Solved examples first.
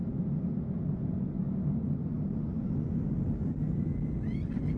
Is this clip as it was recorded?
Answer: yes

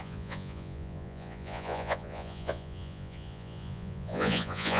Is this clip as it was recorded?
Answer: no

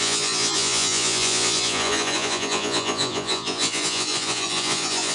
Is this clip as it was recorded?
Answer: no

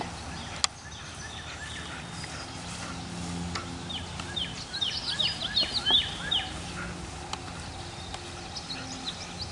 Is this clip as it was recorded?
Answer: yes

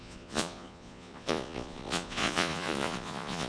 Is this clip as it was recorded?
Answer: no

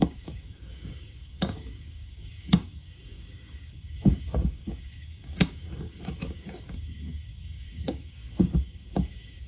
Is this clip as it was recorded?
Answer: no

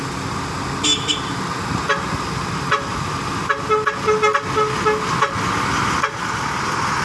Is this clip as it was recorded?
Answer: yes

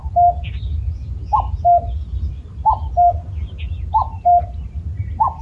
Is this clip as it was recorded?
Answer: yes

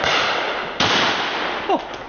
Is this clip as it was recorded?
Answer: yes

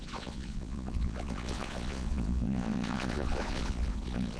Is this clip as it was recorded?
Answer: no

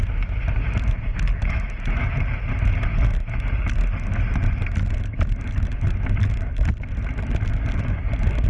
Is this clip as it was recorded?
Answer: yes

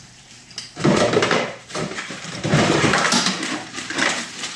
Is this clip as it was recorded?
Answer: no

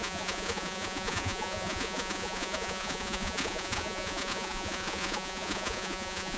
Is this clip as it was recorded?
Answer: no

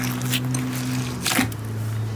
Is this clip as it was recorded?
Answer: yes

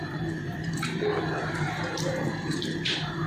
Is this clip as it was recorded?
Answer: no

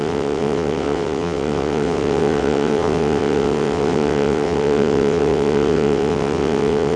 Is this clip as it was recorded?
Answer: no